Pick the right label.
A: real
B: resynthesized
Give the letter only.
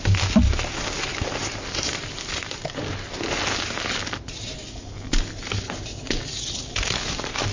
A